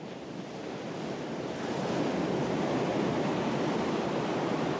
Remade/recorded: recorded